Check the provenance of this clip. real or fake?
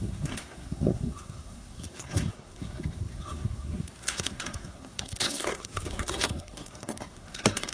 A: fake